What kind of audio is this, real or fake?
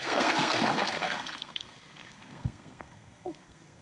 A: fake